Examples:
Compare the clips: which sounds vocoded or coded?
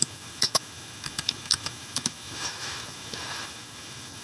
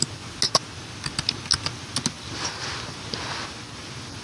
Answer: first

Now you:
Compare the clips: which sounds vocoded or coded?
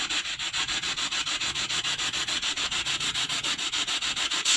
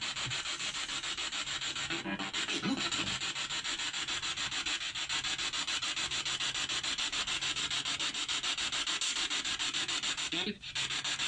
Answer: first